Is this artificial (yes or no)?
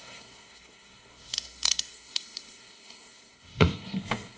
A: yes